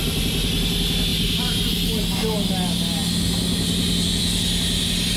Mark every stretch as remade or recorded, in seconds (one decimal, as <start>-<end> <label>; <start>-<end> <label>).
0.0-1.1 recorded; 1.1-1.7 remade; 1.7-5.2 recorded